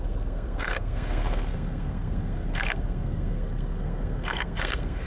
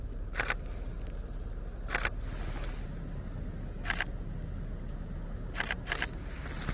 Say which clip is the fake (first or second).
first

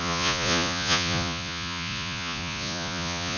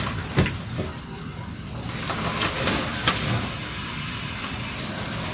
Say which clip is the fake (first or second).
first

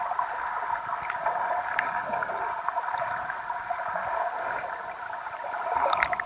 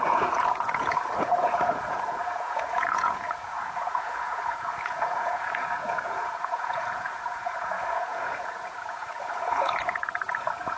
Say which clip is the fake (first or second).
second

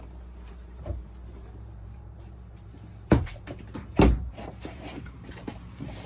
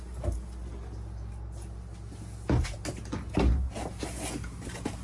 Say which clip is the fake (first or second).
first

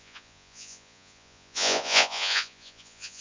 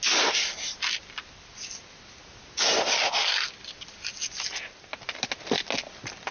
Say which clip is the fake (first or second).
first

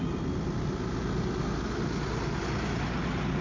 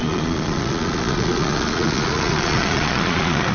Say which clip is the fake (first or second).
second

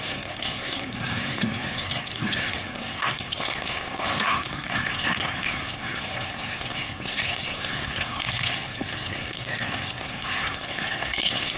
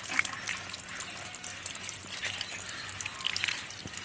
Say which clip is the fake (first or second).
first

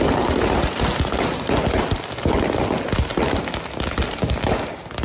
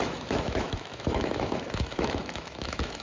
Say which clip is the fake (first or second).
second